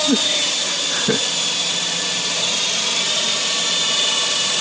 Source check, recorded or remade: remade